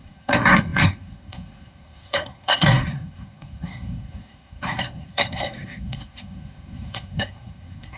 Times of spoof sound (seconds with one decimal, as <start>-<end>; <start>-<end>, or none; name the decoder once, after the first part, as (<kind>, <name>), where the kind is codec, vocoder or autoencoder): 0.0-8.0 (codec, SNAC)